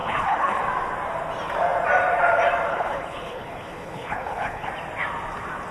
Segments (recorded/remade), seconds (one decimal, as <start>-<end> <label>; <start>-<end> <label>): 0.0-0.6 remade; 0.6-2.7 recorded; 2.7-4.7 remade; 4.7-5.7 recorded